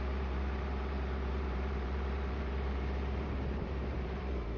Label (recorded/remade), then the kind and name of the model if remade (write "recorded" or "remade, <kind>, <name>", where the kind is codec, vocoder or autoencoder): remade, vocoder, BigVGAN v2